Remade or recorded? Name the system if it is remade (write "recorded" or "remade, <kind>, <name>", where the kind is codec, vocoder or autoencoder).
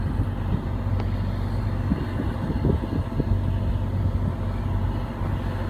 recorded